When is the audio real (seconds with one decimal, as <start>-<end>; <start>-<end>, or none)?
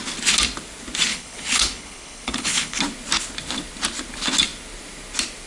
0.0-1.1; 2.8-5.5